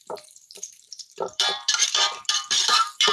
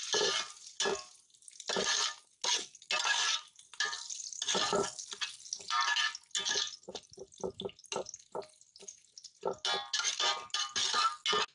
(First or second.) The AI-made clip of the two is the first